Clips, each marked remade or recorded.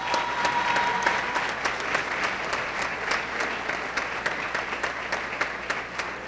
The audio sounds recorded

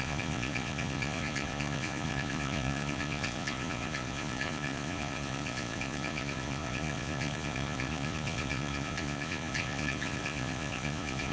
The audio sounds remade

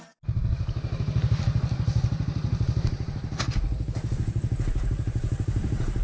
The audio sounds remade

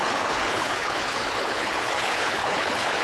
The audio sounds remade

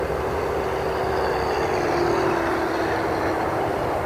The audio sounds recorded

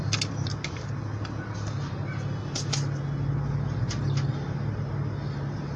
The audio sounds recorded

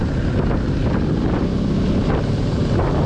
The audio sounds recorded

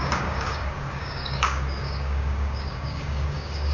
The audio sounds remade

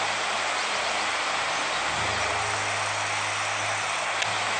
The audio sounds recorded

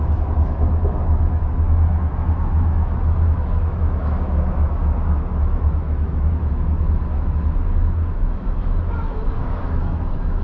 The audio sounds remade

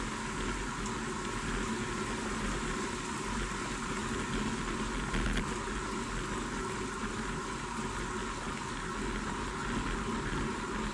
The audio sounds recorded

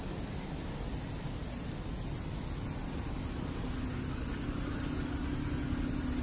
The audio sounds recorded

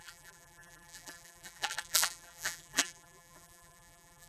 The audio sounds remade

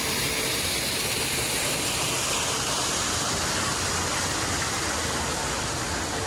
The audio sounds recorded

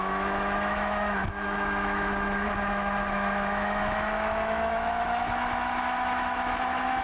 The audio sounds remade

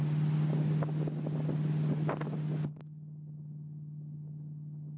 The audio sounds recorded